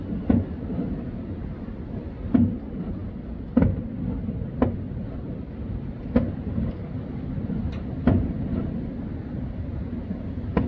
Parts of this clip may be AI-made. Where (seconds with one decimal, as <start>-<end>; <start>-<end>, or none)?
none